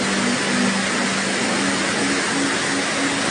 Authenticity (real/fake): real